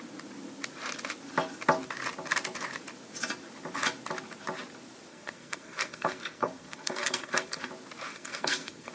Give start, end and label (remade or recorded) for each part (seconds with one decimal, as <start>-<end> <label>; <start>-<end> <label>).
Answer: 0.0-5.1 recorded; 5.1-7.7 remade; 7.7-8.1 recorded; 8.1-8.9 remade